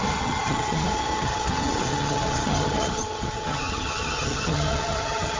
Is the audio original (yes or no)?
no